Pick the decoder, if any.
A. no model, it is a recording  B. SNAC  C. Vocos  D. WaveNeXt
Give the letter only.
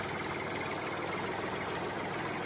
A